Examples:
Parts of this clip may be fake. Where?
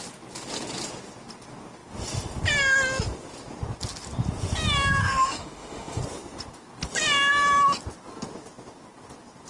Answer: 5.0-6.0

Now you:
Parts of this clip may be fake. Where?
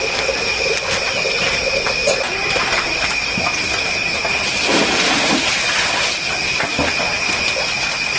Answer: none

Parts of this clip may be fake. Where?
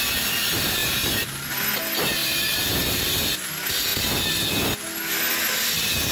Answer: 0.8-1.5; 2.2-3.3